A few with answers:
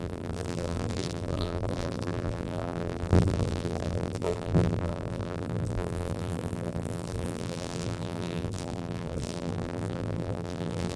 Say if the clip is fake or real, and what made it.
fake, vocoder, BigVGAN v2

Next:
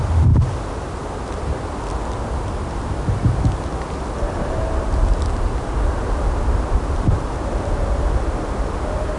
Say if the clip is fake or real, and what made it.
real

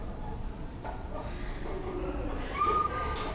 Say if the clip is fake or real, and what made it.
fake, vocoder, BigVGAN v2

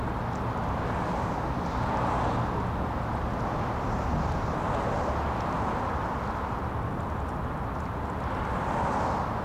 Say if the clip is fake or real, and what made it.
real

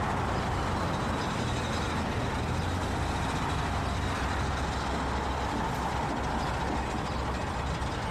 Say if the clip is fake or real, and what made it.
real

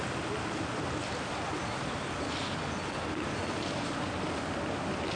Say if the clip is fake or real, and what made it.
real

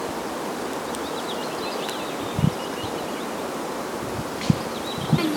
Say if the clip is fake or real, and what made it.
real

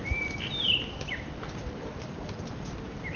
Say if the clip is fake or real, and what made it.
fake, vocoder, BigVGAN v2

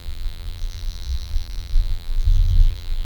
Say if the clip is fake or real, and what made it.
fake, vocoder, BigVGAN v2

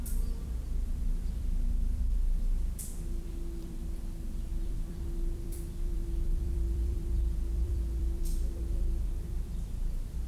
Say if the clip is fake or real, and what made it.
fake, vocoder, BigVGAN v2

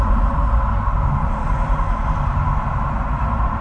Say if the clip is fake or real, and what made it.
fake, vocoder, BigVGAN v2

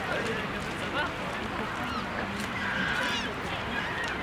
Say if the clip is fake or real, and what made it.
real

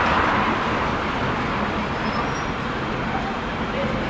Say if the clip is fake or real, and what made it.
real